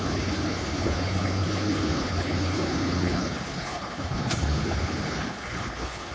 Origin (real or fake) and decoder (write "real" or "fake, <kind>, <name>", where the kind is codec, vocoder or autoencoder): fake, codec, HILCodec